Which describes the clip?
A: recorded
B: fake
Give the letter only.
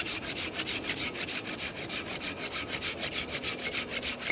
A